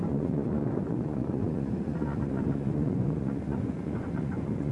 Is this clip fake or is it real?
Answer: fake